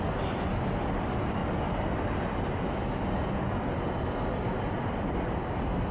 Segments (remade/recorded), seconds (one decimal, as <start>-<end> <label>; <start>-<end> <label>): 0.0-5.9 recorded